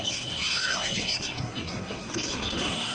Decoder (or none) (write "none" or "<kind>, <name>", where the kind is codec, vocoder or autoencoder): codec, SNAC